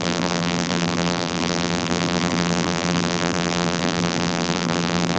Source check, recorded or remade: remade